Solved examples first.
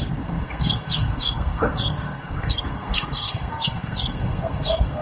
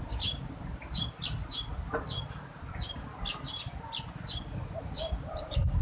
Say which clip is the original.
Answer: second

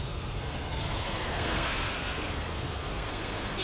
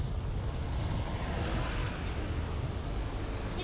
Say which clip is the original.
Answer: second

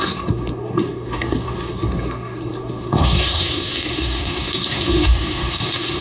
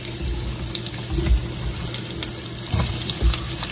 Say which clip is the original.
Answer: second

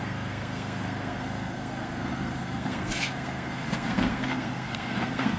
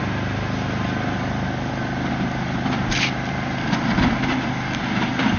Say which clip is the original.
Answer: second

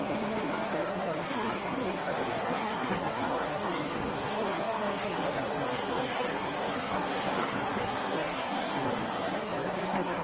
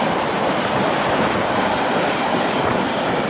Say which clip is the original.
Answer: second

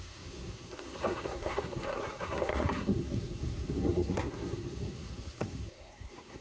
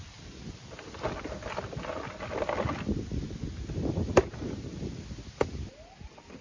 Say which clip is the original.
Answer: second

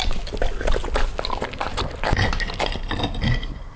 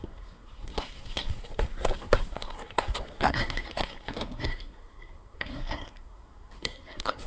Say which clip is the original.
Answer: first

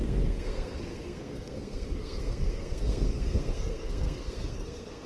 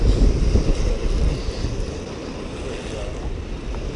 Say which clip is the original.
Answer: second